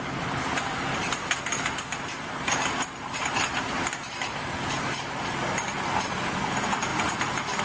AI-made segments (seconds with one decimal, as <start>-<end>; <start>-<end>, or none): none